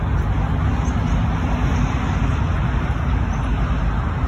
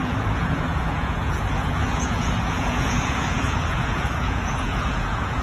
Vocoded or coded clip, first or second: second